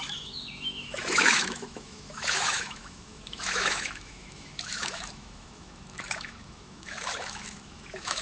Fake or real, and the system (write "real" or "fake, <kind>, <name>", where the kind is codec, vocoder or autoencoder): fake, autoencoder, DAC-VAE